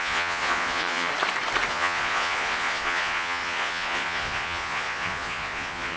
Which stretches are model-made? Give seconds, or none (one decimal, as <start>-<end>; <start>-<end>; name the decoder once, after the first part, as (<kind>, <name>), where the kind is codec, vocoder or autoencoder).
0.0-1.1 (vocoder, Vocos); 1.7-6.0